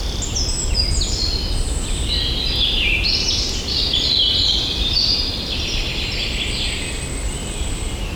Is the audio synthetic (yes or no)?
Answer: no